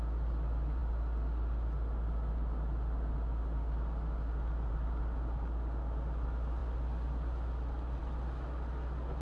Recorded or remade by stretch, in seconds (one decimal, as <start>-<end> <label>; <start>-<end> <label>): 0.0-9.2 recorded